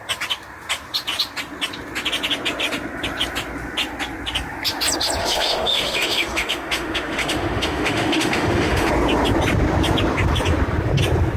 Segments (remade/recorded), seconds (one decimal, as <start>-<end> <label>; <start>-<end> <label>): 0.0-5.2 recorded; 5.2-8.9 remade; 8.9-11.4 recorded